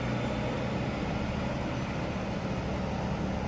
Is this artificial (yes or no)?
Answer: no